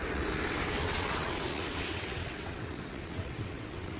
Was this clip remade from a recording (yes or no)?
yes